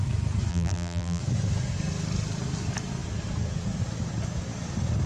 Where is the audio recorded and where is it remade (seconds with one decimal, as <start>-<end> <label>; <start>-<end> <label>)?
0.0-0.5 recorded; 0.5-1.2 remade; 1.2-5.1 recorded